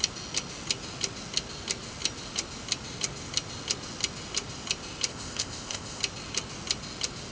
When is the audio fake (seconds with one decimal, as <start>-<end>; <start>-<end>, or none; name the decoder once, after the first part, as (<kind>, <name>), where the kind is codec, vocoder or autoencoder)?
5.1-6.0 (codec, ZipCodec)